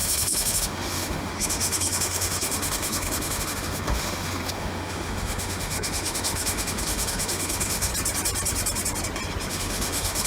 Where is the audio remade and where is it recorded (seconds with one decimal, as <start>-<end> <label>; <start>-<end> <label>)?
0.0-7.9 remade; 7.9-9.5 recorded; 9.5-10.3 remade